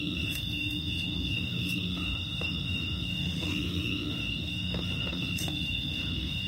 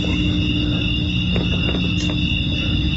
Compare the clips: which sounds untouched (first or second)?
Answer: second